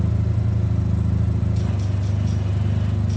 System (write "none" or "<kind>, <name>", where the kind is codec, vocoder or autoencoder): none